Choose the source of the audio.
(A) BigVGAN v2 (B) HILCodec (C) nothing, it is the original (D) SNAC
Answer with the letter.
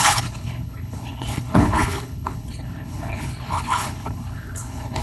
B